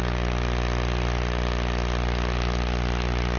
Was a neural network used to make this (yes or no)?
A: no